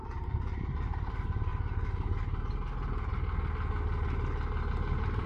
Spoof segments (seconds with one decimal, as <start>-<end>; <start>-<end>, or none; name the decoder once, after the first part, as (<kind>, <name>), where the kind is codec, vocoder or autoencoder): 0.0-1.5 (vocoder, BigVGAN v2); 4.7-5.3